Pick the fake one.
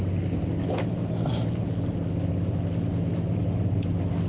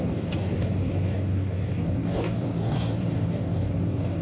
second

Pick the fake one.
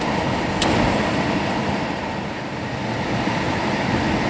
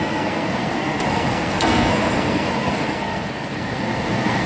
second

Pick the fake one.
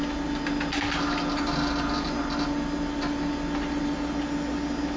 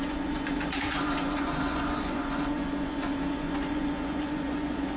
second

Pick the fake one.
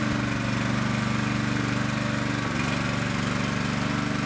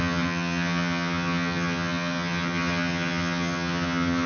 second